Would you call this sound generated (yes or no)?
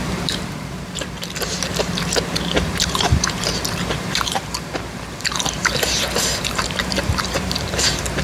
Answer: yes